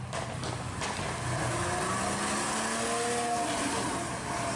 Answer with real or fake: real